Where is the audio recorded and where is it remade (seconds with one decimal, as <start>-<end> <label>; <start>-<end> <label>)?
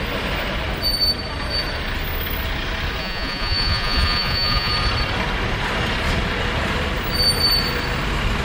0.0-3.0 recorded; 3.0-4.7 remade; 4.7-8.4 recorded